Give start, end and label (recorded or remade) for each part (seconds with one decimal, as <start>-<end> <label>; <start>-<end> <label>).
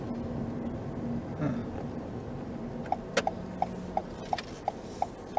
0.0-1.6 recorded; 1.6-2.5 remade; 2.5-4.0 recorded; 4.0-4.7 remade; 4.7-5.4 recorded